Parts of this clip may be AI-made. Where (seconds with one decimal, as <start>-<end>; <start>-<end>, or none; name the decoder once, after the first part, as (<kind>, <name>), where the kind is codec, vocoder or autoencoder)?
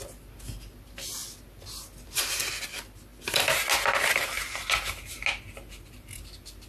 none